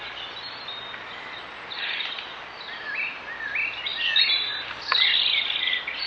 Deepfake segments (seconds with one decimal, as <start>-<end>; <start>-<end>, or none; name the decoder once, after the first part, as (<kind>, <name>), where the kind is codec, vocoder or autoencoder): none